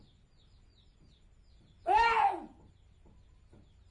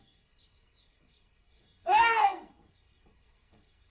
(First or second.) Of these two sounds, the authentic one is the first